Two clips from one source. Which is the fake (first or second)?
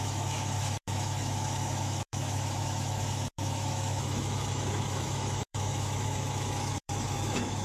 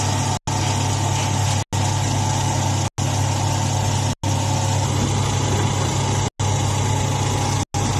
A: first